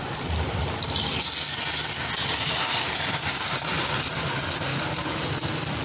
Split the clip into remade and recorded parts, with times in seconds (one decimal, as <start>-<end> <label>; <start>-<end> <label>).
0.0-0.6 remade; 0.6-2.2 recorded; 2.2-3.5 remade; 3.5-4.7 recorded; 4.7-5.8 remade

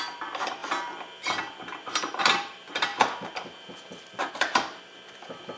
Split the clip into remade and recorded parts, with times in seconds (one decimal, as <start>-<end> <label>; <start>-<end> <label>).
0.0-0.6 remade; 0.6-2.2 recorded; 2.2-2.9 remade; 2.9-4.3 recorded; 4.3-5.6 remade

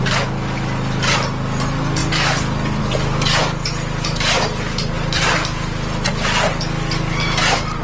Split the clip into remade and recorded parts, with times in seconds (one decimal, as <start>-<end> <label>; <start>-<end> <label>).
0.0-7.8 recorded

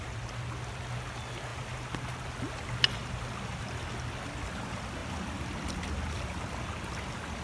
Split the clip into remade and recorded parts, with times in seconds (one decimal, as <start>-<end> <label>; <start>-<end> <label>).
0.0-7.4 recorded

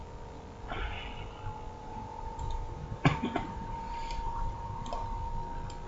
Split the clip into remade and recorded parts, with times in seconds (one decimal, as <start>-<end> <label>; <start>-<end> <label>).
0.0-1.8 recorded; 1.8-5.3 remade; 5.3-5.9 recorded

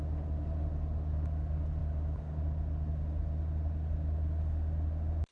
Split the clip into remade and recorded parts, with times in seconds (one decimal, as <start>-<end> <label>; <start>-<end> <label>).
0.0-5.3 recorded